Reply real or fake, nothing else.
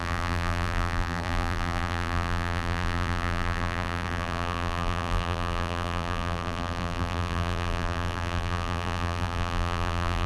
fake